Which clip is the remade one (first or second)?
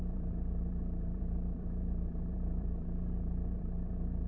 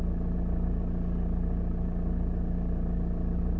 first